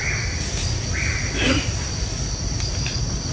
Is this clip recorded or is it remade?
recorded